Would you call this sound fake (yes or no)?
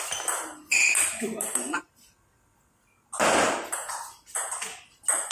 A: no